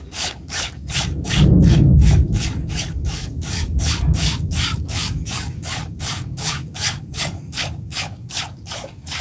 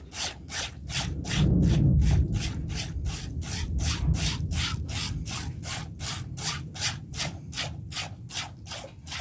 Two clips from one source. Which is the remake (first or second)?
first